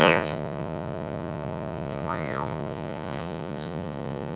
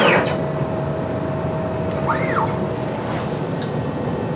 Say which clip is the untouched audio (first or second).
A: second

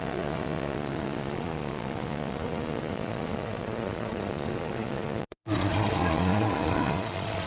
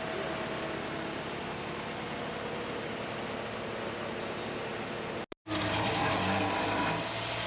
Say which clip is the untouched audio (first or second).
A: second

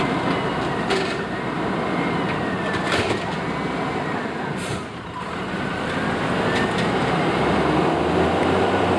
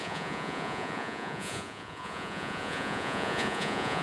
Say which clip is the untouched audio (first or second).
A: first